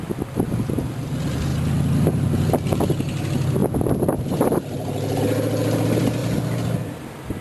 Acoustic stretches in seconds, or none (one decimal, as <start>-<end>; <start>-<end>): 0.0-3.6; 5.2-6.2; 6.9-7.4